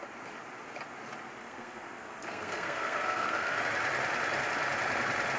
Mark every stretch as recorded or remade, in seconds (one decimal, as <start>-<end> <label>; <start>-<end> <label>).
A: 0.0-1.4 recorded; 1.4-3.6 remade; 3.6-5.4 recorded